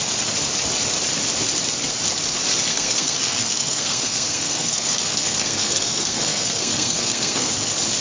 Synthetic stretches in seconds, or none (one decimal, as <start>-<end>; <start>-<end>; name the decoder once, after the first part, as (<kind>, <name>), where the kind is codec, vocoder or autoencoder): 2.7-7.5 (codec, SNAC)